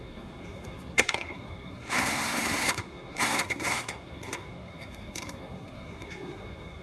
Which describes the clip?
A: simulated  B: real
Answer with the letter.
A